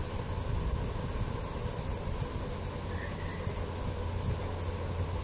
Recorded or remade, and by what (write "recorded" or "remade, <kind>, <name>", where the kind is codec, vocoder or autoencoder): recorded